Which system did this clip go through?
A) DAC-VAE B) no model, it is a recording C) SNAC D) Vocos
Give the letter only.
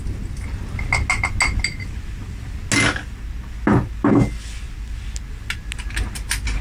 B